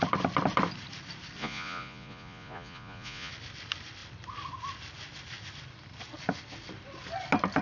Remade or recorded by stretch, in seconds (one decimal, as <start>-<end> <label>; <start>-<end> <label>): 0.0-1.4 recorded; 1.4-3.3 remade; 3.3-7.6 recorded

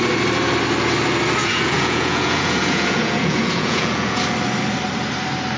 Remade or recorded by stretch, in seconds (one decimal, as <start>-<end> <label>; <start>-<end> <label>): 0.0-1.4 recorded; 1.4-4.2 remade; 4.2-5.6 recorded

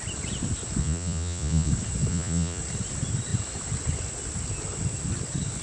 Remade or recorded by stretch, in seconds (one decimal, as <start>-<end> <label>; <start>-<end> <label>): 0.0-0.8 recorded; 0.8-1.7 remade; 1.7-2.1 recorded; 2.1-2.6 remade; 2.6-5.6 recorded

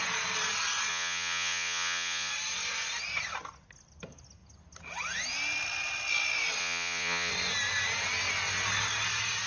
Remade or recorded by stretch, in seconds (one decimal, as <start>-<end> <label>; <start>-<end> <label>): 0.0-0.9 recorded; 0.9-2.3 remade; 2.3-6.6 recorded; 6.6-7.3 remade; 7.3-9.5 recorded